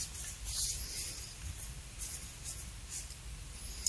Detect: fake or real real